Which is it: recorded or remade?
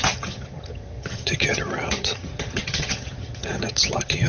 remade